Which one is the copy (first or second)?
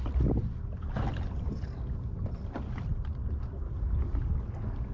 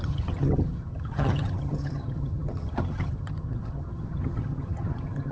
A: second